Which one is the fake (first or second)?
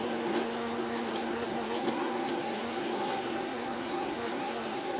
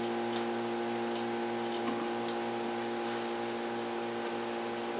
first